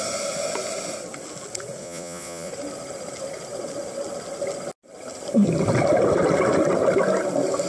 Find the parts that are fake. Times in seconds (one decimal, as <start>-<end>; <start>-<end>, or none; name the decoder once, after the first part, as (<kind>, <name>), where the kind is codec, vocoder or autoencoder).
1.8-2.5 (vocoder, Vocos)